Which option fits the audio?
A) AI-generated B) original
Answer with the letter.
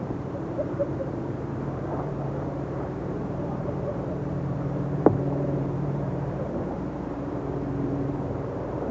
A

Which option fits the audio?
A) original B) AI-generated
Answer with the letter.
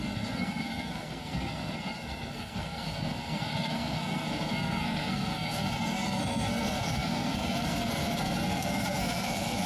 B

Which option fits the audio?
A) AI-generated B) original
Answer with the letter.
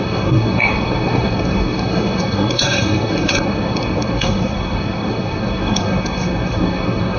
A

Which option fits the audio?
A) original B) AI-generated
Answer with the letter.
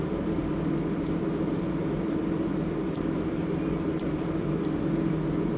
B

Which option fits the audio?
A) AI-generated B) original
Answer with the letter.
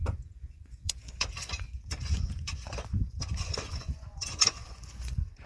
A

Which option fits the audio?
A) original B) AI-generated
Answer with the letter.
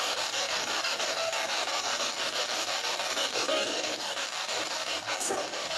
B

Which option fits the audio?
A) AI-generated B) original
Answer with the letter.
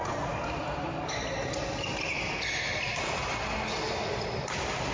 B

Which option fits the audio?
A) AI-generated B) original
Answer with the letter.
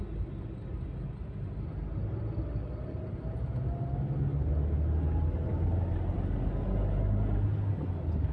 B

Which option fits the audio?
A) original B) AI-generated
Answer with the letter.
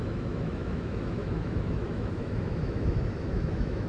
B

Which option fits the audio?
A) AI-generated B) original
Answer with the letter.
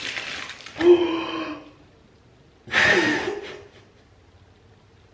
B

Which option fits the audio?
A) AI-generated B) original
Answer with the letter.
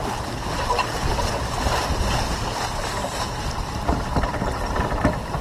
A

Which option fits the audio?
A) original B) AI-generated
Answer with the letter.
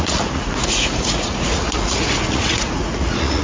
B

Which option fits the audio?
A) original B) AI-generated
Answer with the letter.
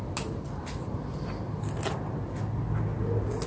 A